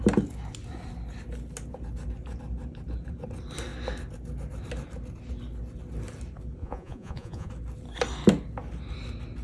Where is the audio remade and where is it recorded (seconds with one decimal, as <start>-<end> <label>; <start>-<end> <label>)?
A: 0.0-6.6 recorded; 6.6-7.5 remade; 7.5-9.4 recorded